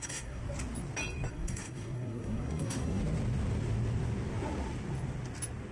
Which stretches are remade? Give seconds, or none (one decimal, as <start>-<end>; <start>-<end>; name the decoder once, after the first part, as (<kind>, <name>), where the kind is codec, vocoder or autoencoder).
0.0-0.4 (codec, SNAC); 1.3-3.0